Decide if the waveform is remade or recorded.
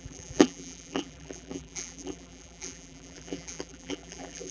remade